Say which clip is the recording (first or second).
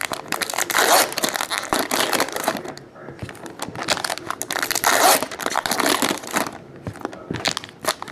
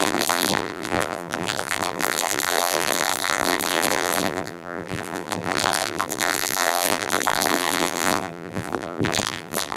first